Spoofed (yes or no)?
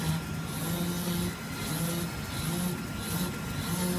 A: no